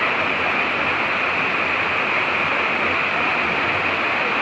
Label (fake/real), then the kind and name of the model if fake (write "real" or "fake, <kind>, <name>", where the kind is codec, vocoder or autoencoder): real